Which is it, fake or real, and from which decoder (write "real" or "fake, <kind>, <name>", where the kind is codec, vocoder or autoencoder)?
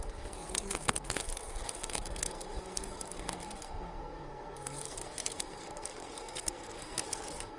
fake, codec, SNAC